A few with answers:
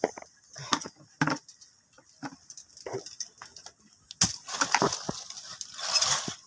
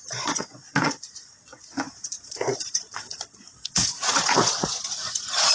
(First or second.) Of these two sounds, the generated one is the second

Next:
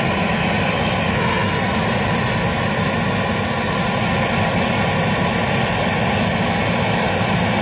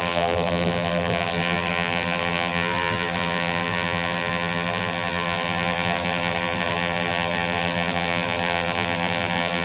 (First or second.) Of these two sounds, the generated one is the second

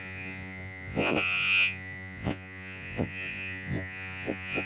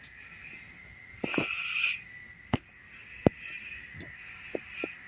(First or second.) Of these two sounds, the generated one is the first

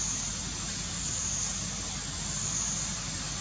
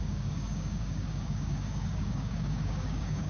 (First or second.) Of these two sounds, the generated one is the second